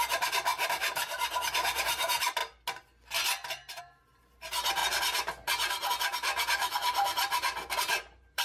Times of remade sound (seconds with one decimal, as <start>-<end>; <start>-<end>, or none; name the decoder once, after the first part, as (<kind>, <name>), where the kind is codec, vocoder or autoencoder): 0.0-2.4 (vocoder, BigVGAN v2); 3.8-4.8; 5.9-8.4